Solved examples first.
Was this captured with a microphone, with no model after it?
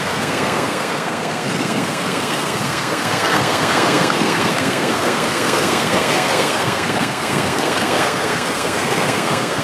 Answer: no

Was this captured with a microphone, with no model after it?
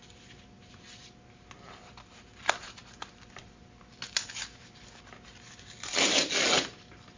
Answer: yes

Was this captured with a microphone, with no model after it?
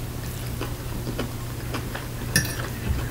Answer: yes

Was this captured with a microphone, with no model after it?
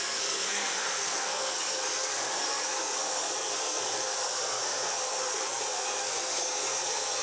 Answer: no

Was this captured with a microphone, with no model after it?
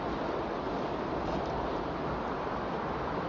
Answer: yes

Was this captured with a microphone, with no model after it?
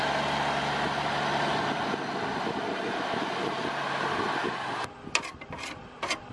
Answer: yes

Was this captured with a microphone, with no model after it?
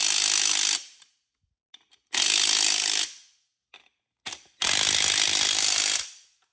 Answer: yes